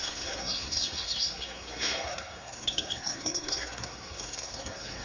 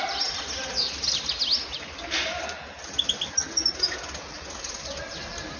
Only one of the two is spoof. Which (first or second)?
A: first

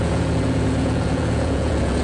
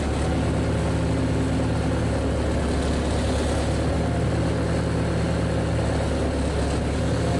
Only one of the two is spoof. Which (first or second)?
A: first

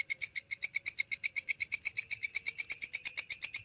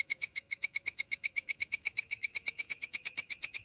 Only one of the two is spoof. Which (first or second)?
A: second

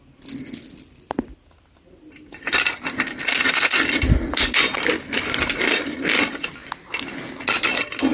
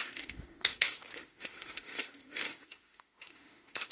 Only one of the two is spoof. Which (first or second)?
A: second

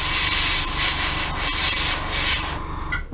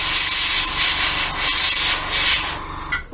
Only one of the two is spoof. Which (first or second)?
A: first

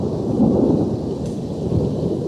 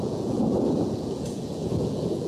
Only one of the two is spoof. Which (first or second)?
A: second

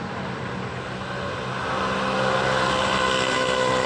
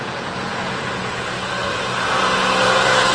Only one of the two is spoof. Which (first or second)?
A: second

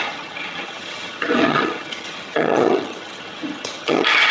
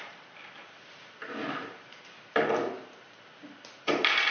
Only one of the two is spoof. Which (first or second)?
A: first